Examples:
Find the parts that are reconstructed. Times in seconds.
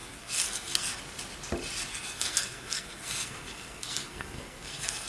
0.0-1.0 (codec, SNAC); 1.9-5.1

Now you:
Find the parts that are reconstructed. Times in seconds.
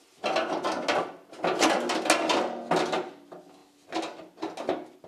none